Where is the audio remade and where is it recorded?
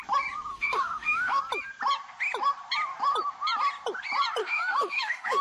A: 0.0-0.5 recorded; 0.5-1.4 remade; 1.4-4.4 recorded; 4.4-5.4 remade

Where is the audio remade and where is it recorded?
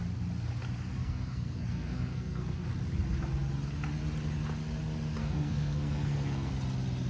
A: 0.0-1.0 recorded; 1.0-2.7 remade; 2.7-5.2 recorded; 5.2-6.5 remade; 6.5-7.1 recorded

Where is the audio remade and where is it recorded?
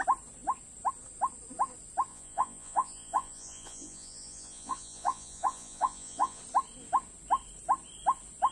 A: 0.0-2.1 recorded; 2.1-6.4 remade; 6.4-8.5 recorded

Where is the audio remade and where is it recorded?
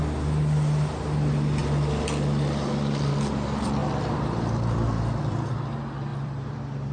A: 0.0-3.8 recorded; 3.8-5.5 remade; 5.5-6.1 recorded; 6.1-6.9 remade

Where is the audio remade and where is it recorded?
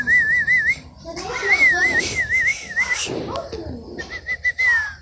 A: 0.0-5.0 recorded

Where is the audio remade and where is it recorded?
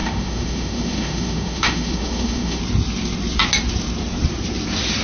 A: 0.0-2.6 remade; 2.6-5.0 recorded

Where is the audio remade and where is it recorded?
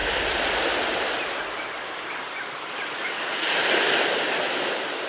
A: 0.0-5.1 recorded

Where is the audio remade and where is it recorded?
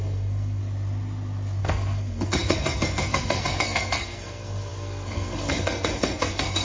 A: 0.0-0.6 remade; 0.6-1.6 recorded; 1.6-6.6 remade